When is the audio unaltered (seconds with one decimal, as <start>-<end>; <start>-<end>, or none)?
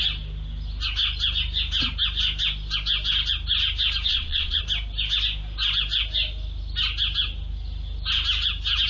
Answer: 0.0-4.1; 4.6-8.9